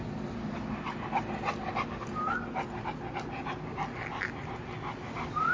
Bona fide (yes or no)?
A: yes